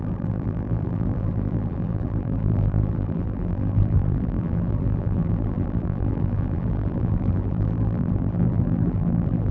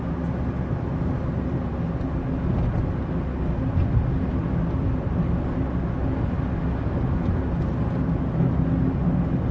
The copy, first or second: first